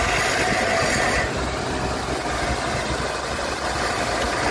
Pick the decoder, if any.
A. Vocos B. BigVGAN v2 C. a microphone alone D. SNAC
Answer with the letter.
C